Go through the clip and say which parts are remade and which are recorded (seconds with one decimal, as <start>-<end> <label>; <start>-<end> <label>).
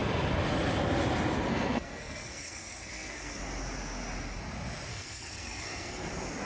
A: 0.0-1.5 recorded; 1.5-3.4 remade; 3.4-4.9 recorded; 4.9-6.1 remade; 6.1-6.5 recorded